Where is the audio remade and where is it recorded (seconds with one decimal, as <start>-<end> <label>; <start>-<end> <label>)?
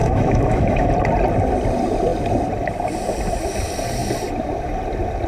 0.0-0.9 remade; 0.9-5.3 recorded